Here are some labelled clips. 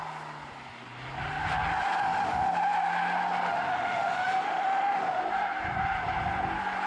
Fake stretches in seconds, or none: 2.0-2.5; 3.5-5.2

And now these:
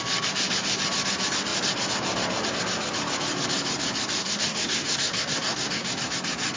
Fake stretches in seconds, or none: 4.2-5.9

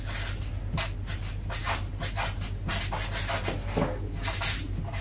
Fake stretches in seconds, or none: none

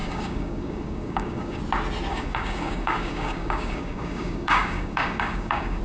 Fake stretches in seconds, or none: 0.0-1.6; 2.1-5.8

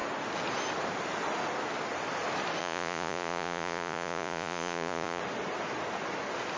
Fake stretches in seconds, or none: 2.6-5.2

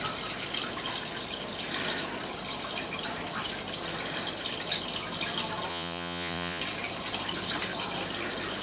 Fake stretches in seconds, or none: 5.7-6.6